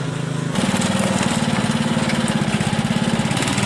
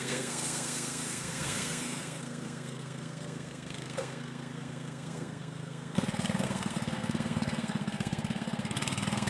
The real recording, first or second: first